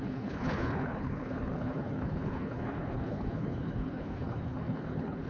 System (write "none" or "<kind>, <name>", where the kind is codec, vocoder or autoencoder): codec, HILCodec